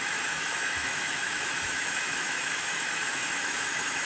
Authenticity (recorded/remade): remade